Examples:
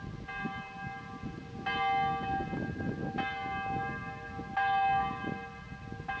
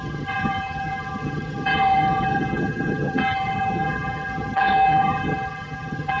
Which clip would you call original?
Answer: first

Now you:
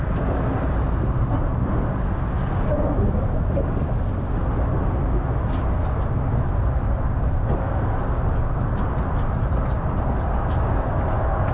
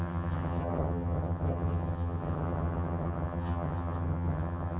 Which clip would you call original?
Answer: first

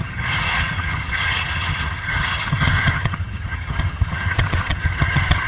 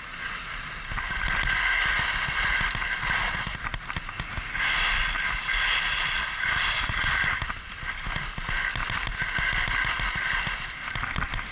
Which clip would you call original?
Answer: second